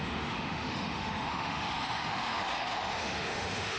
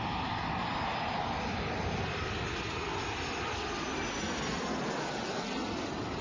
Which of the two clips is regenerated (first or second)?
first